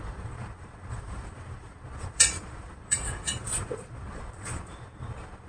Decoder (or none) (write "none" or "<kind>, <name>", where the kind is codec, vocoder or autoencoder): vocoder, Vocos